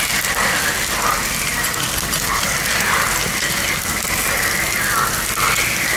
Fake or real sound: real